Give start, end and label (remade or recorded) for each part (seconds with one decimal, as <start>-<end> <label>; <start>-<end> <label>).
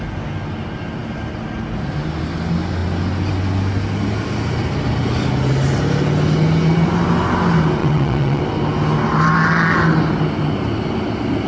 0.0-7.8 recorded; 7.8-8.4 remade; 8.4-11.5 recorded